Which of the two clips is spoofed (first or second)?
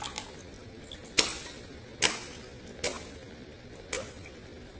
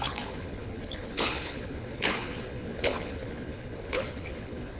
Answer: second